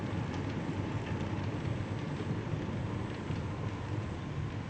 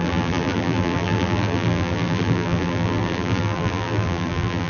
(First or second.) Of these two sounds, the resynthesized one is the second